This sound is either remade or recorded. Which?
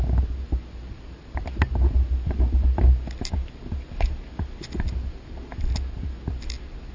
recorded